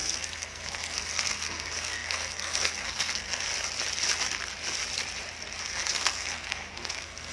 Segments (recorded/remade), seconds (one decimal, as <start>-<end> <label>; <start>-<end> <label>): 0.0-3.5 remade; 3.5-5.6 recorded; 5.6-7.3 remade